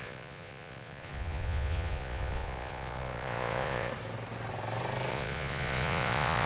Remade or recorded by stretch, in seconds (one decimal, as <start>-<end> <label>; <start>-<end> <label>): 0.0-3.9 remade; 3.9-5.1 recorded; 5.1-6.5 remade